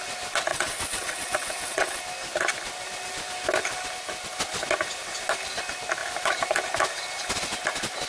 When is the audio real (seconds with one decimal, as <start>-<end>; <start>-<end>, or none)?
0.0-0.5; 2.0-8.1